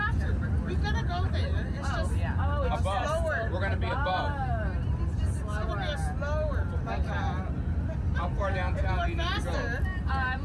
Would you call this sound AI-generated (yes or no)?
no